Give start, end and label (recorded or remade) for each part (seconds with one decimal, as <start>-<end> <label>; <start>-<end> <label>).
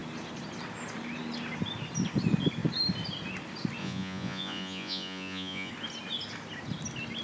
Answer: 0.0-3.8 recorded; 3.8-5.7 remade; 5.7-7.2 recorded